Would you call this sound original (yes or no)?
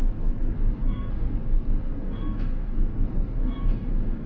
no